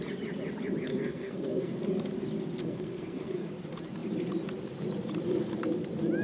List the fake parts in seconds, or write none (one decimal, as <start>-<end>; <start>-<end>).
0.9-1.8; 2.6-3.5